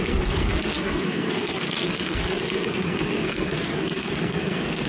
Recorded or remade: remade